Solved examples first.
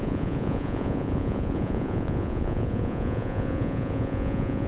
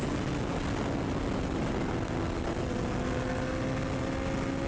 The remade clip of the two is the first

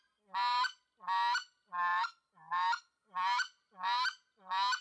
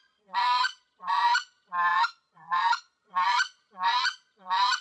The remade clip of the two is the second